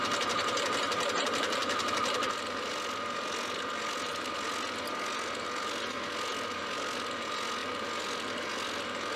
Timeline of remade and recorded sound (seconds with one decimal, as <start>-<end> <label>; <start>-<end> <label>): 0.0-1.6 recorded; 1.6-2.7 remade; 2.7-7.6 recorded; 7.6-8.5 remade; 8.5-9.2 recorded